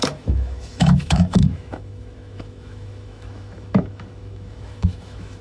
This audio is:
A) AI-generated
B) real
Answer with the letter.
A